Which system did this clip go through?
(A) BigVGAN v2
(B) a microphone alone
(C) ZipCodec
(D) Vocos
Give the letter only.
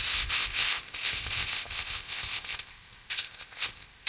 C